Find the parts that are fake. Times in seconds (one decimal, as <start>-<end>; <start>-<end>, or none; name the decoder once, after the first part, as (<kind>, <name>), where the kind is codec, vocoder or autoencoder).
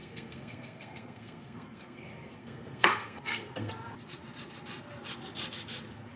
0.0-3.7 (codec, SNAC)